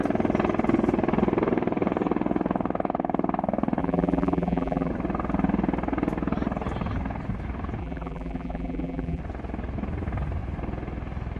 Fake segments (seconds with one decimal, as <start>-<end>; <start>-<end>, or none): 3.8-4.9; 7.8-9.2